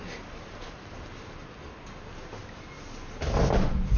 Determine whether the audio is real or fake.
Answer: real